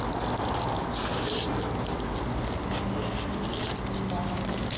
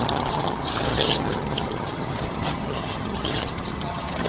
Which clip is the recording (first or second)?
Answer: first